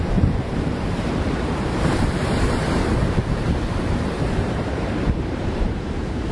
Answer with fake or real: fake